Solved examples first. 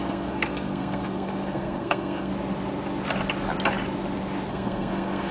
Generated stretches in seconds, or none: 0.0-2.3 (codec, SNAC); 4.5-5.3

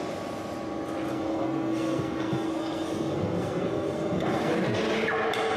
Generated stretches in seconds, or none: 1.1-4.5 (codec, SNAC)

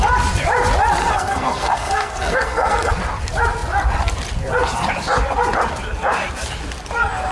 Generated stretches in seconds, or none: 1.0-2.9 (codec, SNAC)

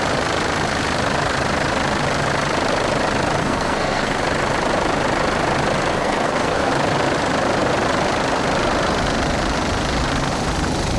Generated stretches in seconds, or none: 3.4-4.2 (codec, SNAC); 5.9-6.7

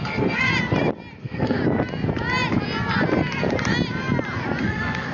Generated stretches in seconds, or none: 0.0-0.5 (codec, SNAC); 1.2-1.6; 4.6-5.1

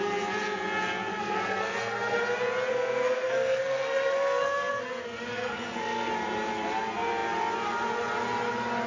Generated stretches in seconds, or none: 1.1-2.2 (codec, SNAC); 2.7-4.7; 5.3-6.1

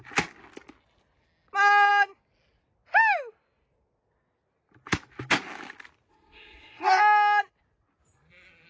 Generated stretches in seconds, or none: 6.1-7.0 (codec, SNAC)